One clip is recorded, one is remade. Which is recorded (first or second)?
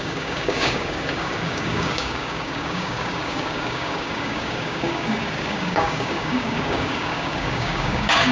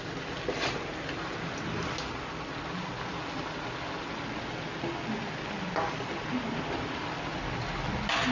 second